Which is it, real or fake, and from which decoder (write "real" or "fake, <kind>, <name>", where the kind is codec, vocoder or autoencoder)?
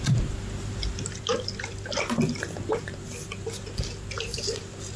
real